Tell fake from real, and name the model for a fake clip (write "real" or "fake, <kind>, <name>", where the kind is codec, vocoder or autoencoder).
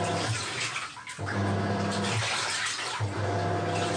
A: real